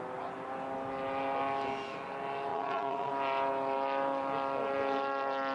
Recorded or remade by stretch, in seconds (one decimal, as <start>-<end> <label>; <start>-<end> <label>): 0.0-2.5 recorded; 2.5-3.1 remade; 3.1-5.5 recorded